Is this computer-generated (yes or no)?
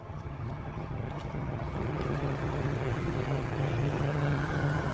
yes